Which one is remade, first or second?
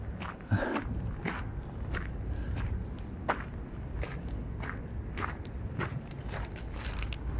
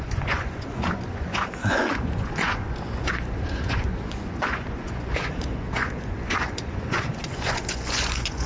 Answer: second